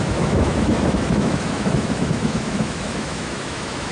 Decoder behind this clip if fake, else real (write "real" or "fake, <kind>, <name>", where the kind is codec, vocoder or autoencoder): fake, autoencoder, DAC-VAE